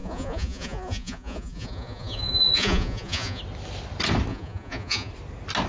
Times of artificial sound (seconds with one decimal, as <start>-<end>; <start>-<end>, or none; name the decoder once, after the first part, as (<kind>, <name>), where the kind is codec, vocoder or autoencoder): 0.0-3.4 (vocoder, Vocos); 4.3-5.1